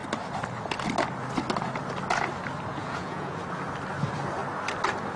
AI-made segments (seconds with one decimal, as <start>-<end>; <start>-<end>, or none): 2.7-3.4